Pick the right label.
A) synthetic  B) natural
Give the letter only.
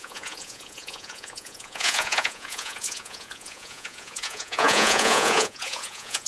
A